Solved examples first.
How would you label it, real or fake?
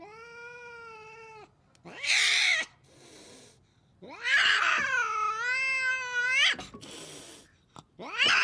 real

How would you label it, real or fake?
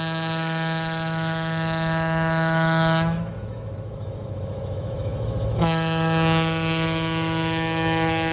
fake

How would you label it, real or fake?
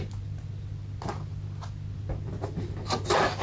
real